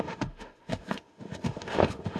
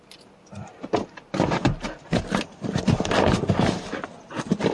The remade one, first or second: first